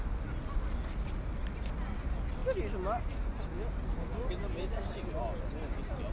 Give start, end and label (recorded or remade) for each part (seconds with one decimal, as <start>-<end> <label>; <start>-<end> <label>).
0.0-6.1 recorded